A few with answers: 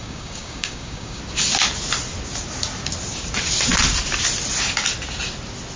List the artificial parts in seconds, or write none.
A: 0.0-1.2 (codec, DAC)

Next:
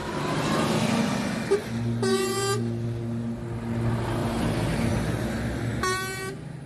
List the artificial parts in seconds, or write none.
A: 0.0-0.9 (vocoder, BigVGAN v2); 4.2-4.9

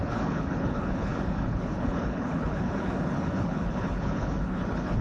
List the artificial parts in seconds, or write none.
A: 0.0-5.0 (codec, HILCodec)

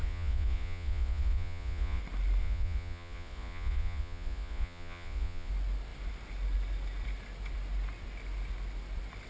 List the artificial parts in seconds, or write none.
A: 0.0-2.0 (vocoder, Vocos); 2.4-5.5

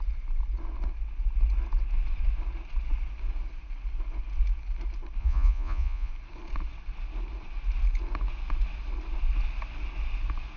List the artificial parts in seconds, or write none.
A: 5.2-6.1 (vocoder, Vocos)

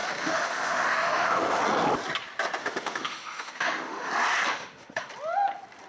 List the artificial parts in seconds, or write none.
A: 0.0-1.6 (autoencoder, DAC-VAE); 2.6-4.1; 4.5-5.1